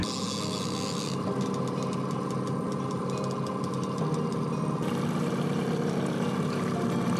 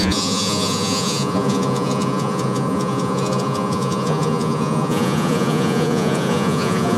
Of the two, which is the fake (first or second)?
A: second